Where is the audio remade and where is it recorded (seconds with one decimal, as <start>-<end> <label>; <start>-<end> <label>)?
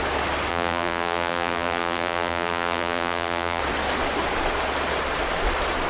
0.0-0.5 recorded; 0.5-3.6 remade; 3.6-5.9 recorded